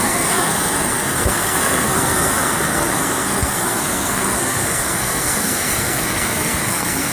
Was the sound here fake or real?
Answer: fake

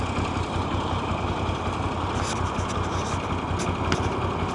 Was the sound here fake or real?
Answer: real